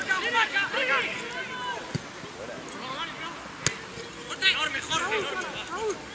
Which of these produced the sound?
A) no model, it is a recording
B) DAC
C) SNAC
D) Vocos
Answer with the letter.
A